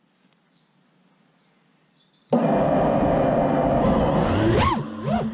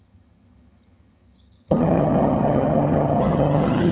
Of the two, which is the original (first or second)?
first